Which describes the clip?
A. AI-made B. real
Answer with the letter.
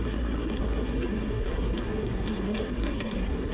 A